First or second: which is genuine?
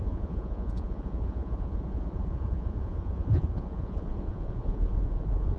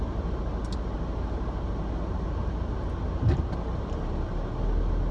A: second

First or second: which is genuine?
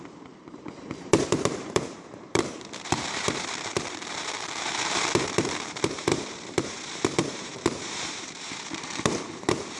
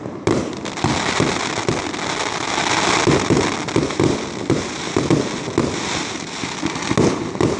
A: second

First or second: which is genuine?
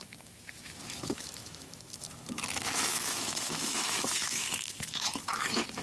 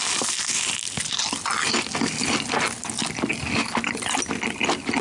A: second